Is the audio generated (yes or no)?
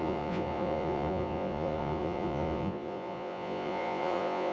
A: yes